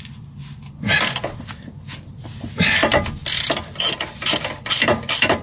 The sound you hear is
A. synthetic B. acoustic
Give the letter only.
B